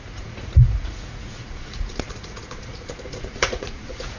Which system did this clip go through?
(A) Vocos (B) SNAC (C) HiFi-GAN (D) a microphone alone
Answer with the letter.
A